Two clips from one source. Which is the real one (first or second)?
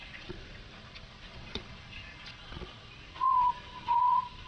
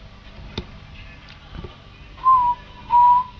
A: second